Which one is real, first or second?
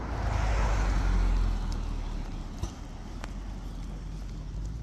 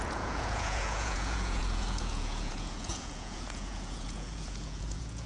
first